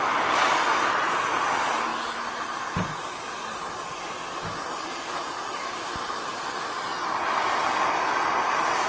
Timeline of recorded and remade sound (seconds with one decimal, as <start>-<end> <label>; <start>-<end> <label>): 0.0-5.2 recorded; 5.2-5.9 remade; 5.9-8.9 recorded